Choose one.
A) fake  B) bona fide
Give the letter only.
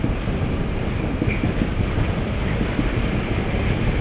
B